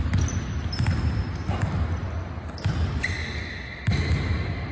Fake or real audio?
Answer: real